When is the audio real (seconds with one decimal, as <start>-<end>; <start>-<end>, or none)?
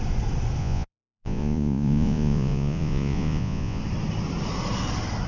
0.0-0.6; 3.8-5.3